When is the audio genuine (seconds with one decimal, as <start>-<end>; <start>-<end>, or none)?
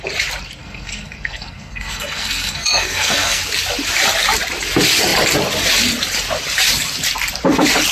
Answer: 0.0-0.6; 3.4-7.9